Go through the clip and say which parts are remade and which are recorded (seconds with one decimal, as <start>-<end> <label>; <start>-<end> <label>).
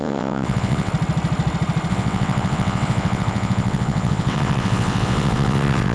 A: 0.0-0.9 remade; 0.9-1.9 recorded; 1.9-5.9 remade